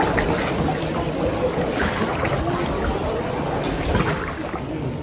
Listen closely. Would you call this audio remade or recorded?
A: recorded